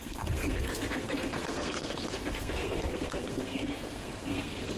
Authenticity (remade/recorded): remade